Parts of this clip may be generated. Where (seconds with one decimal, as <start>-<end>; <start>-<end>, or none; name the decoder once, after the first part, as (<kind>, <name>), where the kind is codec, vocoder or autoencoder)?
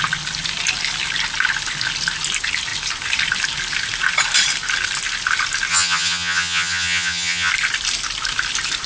5.7-7.5 (vocoder, HiFi-GAN)